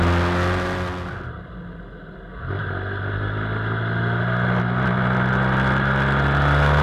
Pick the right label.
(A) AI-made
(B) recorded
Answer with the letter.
B